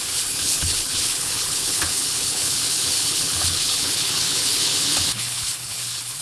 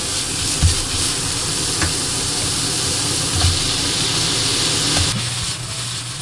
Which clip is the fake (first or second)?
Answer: first